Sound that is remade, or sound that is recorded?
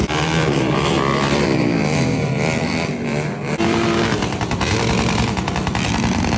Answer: remade